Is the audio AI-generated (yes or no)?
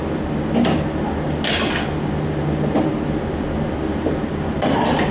no